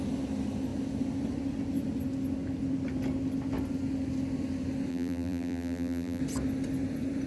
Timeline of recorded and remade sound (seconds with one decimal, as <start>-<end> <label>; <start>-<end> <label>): 0.0-4.9 recorded; 4.9-6.2 remade; 6.2-7.3 recorded

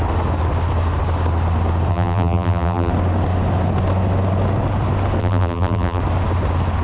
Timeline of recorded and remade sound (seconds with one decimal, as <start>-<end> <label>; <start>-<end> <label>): 0.0-1.9 recorded; 1.9-2.9 remade; 2.9-5.2 recorded; 5.2-6.0 remade; 6.0-6.8 recorded

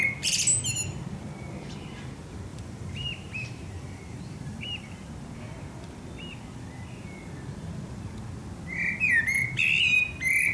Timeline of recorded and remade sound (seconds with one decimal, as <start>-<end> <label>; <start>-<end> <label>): 0.0-2.5 recorded; 2.5-5.1 remade; 5.1-10.5 recorded

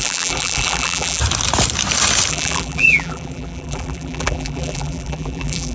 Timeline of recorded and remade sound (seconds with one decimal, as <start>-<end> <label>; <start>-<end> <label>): 0.0-1.2 remade; 1.2-2.3 recorded; 2.3-5.7 remade

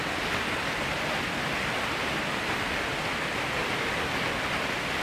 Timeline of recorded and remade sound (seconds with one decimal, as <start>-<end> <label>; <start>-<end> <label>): 0.0-5.0 recorded